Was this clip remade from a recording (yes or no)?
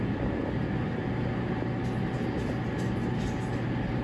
no